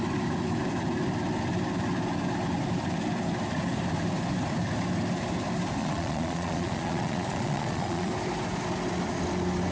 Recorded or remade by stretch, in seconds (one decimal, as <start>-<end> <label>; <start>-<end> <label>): 0.0-5.8 recorded; 5.8-8.1 remade; 8.1-9.7 recorded